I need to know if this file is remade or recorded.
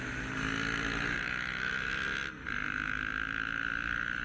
recorded